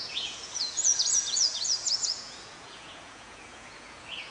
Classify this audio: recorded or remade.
remade